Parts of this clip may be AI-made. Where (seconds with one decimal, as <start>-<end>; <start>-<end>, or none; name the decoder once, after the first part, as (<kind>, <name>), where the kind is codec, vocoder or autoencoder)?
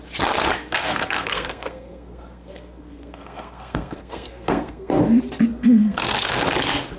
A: 0.8-5.0 (codec, SNAC); 5.5-6.4